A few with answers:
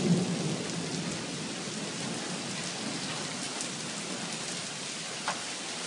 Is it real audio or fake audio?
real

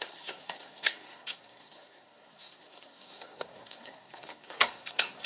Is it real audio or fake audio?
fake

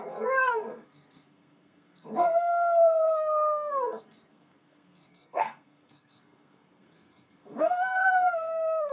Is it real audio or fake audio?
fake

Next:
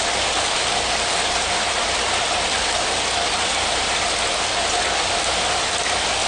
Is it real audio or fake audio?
real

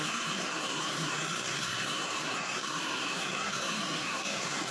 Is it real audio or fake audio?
fake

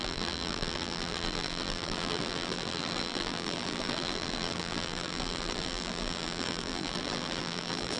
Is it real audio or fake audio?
fake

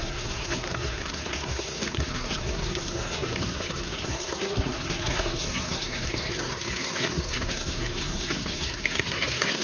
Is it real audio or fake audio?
fake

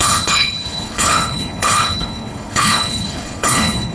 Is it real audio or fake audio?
fake